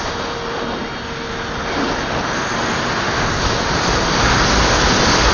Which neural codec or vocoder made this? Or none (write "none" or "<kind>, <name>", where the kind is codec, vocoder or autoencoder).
none